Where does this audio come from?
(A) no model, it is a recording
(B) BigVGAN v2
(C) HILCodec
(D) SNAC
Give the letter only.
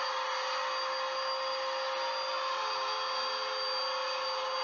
A